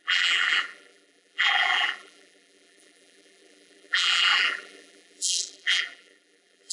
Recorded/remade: remade